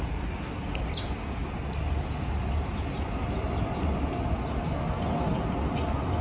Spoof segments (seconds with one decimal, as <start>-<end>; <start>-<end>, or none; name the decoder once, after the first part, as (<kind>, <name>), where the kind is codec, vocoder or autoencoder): none